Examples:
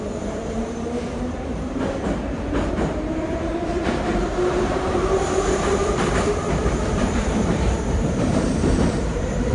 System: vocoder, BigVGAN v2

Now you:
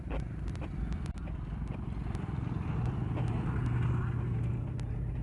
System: none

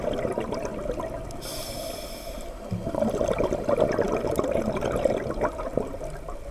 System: none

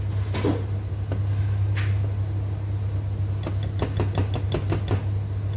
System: none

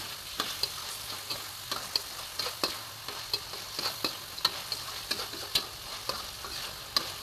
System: none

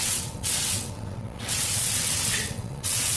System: vocoder, WaveNeXt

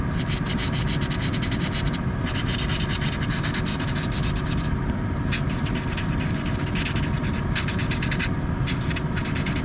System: none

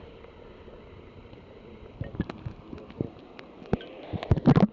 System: none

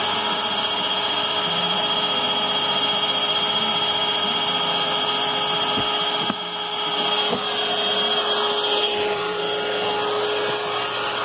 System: vocoder, BigVGAN v2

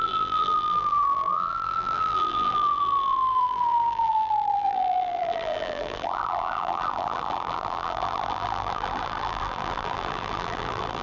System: vocoder, BigVGAN v2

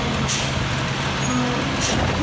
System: none